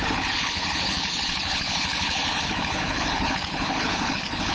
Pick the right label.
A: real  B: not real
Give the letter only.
B